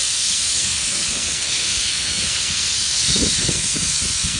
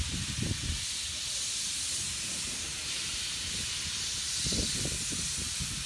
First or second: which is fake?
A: first